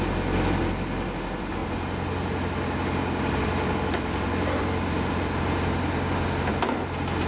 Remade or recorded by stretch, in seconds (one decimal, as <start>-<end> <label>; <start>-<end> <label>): 0.0-7.3 recorded